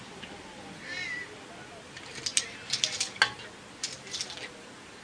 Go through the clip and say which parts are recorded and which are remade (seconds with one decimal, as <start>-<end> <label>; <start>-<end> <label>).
0.0-5.0 recorded